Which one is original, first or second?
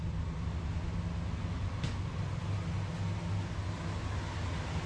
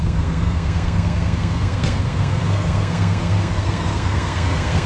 first